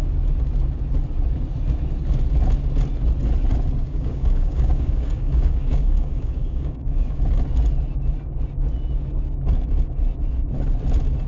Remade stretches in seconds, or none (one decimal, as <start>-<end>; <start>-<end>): 3.8-7.2